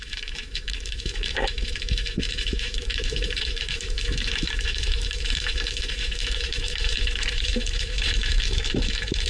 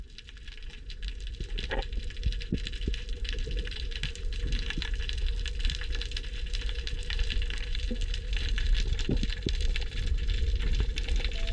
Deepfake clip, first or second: first